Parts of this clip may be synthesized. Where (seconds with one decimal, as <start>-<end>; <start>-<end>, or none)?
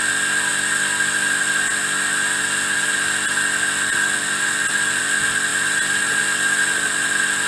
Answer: 5.5-6.1